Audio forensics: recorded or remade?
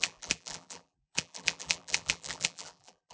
remade